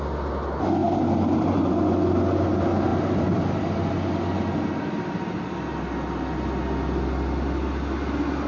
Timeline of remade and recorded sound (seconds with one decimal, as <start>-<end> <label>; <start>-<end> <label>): 0.0-0.8 recorded; 0.8-1.7 remade; 1.7-2.9 recorded; 2.9-3.6 remade; 3.6-8.5 recorded